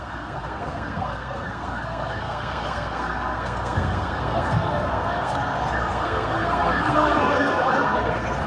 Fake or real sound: fake